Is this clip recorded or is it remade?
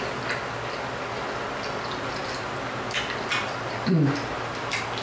recorded